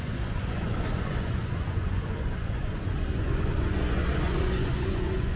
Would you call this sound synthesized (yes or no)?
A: yes